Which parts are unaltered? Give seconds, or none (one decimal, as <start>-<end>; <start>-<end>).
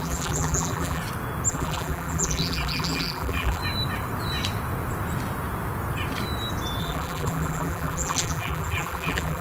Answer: 1.0-1.5; 3.6-6.8